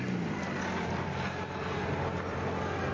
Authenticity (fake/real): real